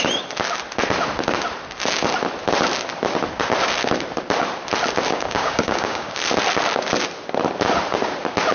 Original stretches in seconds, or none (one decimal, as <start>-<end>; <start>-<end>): 0.0-5.1; 6.1-8.5